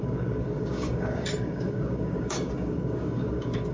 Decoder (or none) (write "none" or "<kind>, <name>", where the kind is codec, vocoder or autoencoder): codec, DAC